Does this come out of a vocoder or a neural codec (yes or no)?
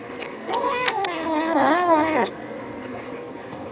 yes